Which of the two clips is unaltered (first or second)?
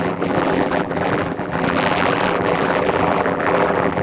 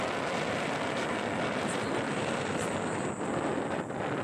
second